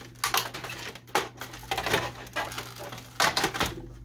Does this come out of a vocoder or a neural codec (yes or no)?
no